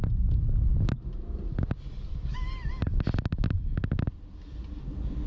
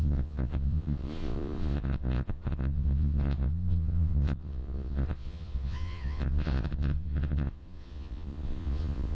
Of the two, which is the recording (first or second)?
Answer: first